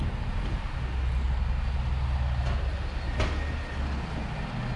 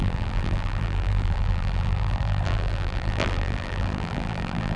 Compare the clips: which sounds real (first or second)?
first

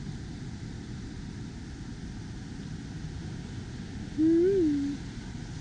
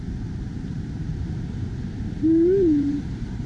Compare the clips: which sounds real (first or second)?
first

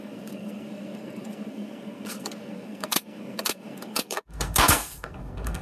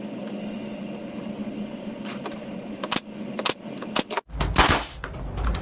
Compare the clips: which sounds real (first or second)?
second